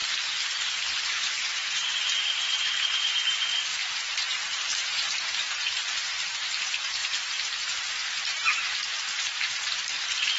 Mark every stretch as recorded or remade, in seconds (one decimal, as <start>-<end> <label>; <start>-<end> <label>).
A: 0.0-1.1 recorded; 1.1-10.4 remade